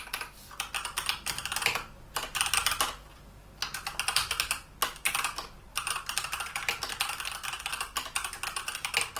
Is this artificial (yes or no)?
no